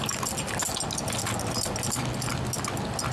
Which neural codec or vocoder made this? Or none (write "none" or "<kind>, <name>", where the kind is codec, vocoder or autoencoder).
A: none